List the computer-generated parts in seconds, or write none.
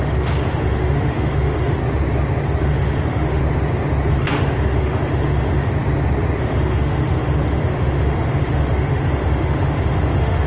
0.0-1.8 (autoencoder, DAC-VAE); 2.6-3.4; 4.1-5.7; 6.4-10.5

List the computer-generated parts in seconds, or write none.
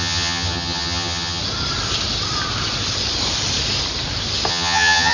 0.0-1.4 (vocoder, HiFi-GAN); 4.5-5.1